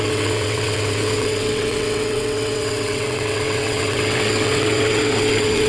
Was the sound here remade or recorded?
remade